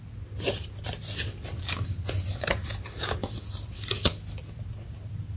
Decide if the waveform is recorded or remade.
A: recorded